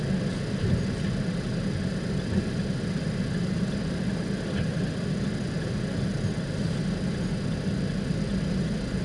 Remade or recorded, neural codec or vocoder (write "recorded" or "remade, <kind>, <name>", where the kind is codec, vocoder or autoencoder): recorded